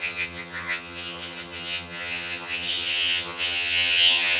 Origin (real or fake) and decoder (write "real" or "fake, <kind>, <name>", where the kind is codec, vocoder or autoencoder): fake, vocoder, HiFi-GAN